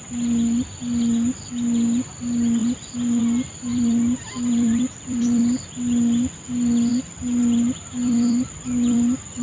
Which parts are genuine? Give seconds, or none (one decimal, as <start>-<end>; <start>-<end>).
0.0-2.6; 3.2-3.7; 5.4-6.9